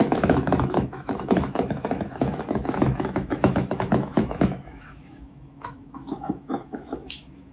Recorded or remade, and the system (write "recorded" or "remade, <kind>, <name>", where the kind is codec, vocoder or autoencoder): remade, autoencoder, DAC-VAE